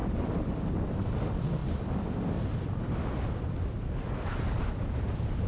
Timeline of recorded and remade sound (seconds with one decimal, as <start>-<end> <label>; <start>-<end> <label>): 0.0-1.2 remade; 1.2-1.6 recorded; 1.6-4.9 remade; 4.9-5.5 recorded